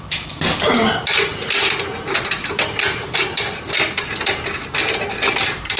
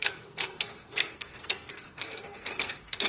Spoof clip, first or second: second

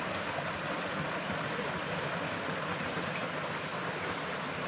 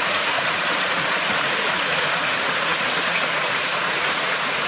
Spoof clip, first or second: second